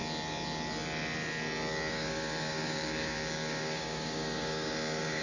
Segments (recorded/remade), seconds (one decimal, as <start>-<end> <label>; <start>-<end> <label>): 0.0-1.9 recorded; 1.9-5.2 remade

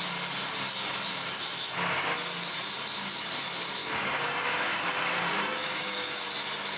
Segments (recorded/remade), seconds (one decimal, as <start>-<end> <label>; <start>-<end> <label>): 0.0-3.8 recorded; 3.8-6.2 remade; 6.2-6.8 recorded